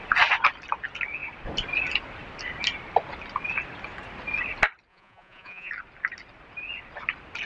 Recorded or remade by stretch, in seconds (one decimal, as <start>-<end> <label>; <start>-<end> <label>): 0.0-4.9 recorded; 4.9-5.7 remade; 5.7-7.5 recorded